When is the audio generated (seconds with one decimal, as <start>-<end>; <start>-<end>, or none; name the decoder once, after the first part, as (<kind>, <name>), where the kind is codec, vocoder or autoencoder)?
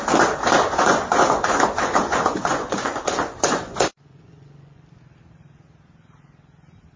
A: 0.6-4.8 (vocoder, Vocos)